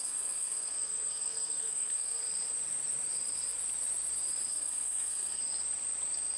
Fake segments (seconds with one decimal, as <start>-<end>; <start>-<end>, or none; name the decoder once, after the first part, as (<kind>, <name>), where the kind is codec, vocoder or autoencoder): 0.0-2.2 (codec, SNAC); 4.5-5.4